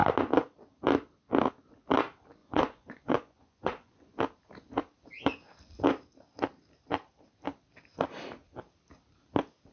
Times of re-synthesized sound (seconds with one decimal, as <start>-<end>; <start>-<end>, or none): 2.4-4.2